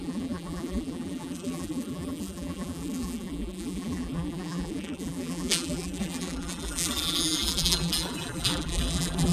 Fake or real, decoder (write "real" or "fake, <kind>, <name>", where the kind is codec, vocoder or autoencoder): fake, vocoder, BigVGAN v2